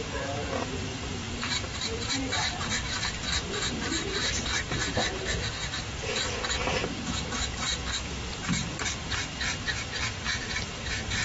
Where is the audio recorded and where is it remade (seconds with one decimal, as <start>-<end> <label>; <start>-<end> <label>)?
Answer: 0.0-0.9 recorded; 0.9-4.3 remade; 4.3-5.7 recorded; 5.7-6.3 remade; 6.3-9.5 recorded; 9.5-11.2 remade